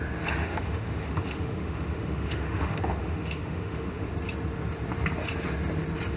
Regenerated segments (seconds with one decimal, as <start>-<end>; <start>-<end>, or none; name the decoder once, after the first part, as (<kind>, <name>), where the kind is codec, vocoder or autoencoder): 0.4-4.1 (autoencoder, DAC-VAE)